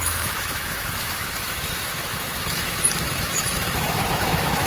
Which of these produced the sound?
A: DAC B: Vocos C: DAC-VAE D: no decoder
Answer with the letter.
C